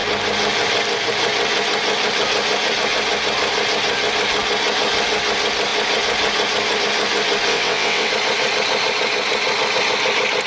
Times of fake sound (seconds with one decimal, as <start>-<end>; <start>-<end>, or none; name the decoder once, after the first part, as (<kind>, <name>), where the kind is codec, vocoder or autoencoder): 7.5-8.1 (vocoder, WaveNeXt)